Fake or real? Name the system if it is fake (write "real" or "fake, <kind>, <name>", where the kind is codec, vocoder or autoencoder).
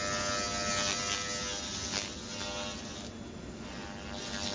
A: real